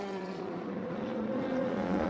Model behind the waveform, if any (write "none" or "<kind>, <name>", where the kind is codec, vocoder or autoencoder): vocoder, Vocos